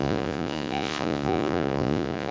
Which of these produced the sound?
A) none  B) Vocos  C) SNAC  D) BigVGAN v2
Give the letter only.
B